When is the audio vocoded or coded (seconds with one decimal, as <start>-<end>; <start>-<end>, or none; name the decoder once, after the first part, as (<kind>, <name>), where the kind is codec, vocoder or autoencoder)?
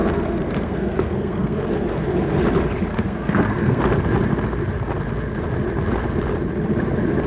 0.0-1.7 (codec, SNAC); 2.9-3.8